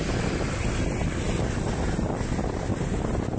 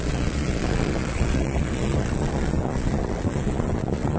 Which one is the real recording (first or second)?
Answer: first